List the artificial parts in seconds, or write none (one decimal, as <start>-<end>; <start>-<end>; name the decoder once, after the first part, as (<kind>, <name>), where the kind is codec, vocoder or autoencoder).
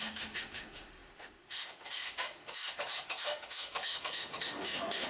0.0-5.1 (autoencoder, DAC-VAE)